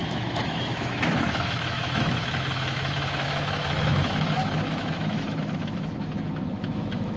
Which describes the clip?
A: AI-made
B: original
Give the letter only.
A